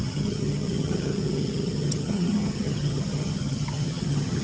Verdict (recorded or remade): remade